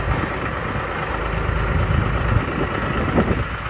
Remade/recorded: recorded